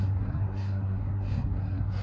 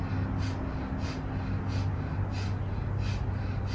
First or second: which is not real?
first